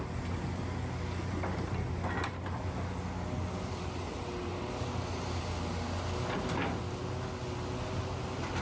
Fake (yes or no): no